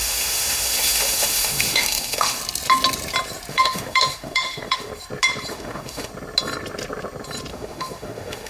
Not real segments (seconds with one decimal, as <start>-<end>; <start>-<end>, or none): 0.0-2.4; 3.5-4.9; 5.5-6.1; 7.5-8.5